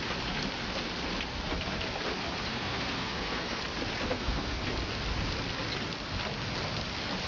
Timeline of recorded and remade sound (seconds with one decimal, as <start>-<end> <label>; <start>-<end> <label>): 0.0-2.5 recorded; 2.5-3.6 remade; 3.6-4.1 recorded; 4.1-4.6 remade; 4.6-7.3 recorded